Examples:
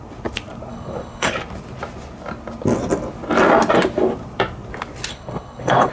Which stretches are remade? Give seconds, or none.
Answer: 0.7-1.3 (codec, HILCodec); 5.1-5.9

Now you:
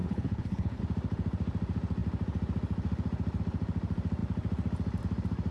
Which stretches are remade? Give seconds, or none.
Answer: 0.0-0.8 (codec, HILCodec)

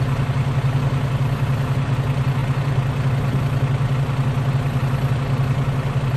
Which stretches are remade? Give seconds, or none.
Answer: none

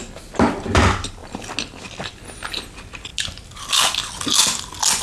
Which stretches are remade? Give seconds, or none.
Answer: none